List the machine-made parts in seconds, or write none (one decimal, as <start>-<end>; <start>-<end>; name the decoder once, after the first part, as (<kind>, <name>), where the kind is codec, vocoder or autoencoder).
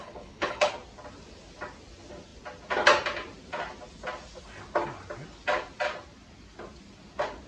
0.0-0.7 (codec, HILCodec)